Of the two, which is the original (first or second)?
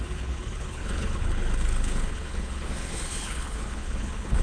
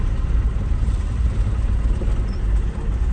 second